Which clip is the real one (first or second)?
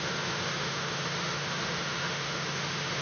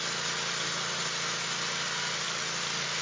second